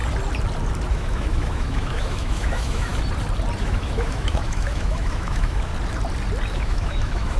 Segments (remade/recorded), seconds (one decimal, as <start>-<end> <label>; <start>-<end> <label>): 0.0-0.9 recorded; 0.9-2.9 remade; 2.9-3.6 recorded; 3.6-5.7 remade; 5.7-6.5 recorded; 6.5-7.4 remade